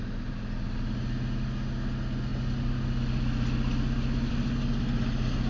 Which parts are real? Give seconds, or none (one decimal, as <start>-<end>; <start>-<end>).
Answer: 0.0-5.5